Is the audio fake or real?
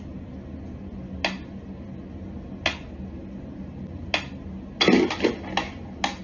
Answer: real